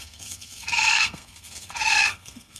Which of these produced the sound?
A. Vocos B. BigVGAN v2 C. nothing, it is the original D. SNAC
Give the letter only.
D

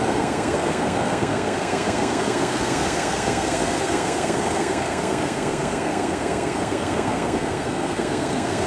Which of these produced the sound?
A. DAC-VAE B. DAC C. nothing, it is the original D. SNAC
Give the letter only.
D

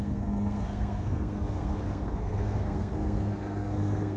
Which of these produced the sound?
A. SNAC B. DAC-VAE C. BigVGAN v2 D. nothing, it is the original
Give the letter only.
A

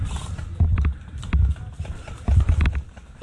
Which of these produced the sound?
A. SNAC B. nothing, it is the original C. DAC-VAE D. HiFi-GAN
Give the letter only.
B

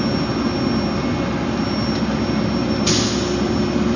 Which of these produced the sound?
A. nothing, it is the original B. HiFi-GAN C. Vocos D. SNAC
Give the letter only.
A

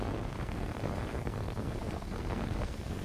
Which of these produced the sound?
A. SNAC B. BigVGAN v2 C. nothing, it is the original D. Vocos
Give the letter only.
A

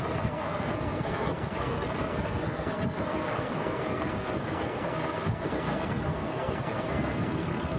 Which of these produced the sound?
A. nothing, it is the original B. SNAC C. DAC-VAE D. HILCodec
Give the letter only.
B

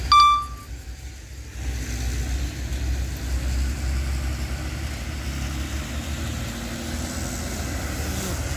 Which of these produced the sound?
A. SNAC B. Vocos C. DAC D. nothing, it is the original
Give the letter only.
D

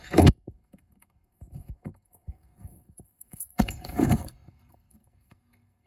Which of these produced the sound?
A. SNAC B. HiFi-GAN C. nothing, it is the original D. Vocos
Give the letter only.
A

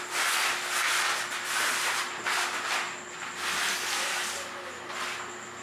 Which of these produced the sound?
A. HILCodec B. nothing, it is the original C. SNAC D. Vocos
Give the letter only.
B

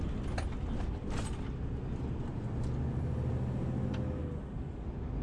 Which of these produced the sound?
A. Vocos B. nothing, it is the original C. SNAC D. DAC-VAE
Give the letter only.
B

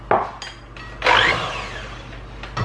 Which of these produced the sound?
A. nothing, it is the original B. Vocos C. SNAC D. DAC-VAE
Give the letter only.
A